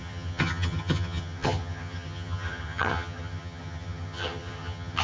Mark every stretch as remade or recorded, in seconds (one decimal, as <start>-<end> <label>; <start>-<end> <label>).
0.0-5.0 remade